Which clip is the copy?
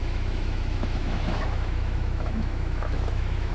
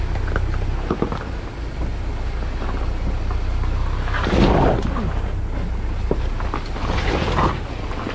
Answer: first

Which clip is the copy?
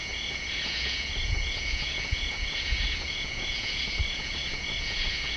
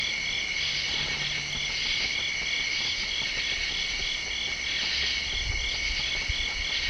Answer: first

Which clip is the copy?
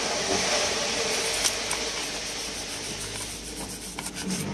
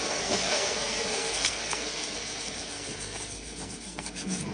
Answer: second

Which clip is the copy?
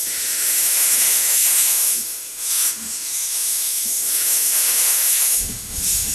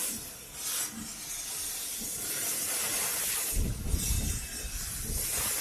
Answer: first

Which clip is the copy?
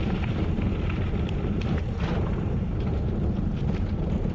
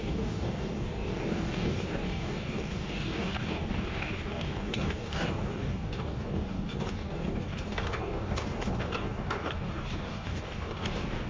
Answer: second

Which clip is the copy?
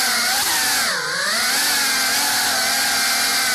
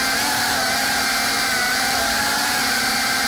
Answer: second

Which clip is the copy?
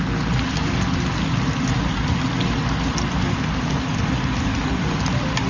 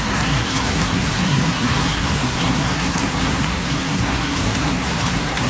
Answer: second